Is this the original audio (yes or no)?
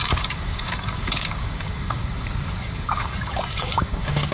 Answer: no